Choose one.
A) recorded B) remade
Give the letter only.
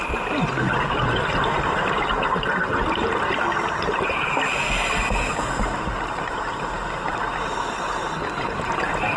A